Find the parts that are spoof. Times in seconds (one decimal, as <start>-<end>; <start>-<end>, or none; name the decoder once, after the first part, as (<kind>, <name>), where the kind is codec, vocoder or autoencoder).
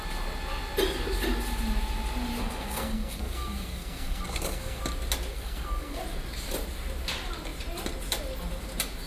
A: 2.3-4.8 (codec, SNAC); 5.3-6.0